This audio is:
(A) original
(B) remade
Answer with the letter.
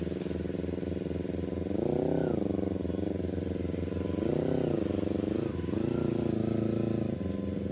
A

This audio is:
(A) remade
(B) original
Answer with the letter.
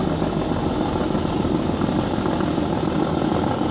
B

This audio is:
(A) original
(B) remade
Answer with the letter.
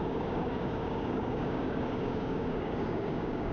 B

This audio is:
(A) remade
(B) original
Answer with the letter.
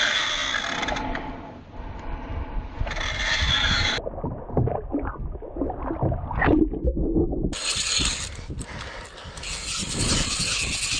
B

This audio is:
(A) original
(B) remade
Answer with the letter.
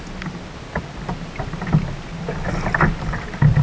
A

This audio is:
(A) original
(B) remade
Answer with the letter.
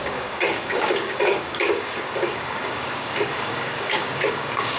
B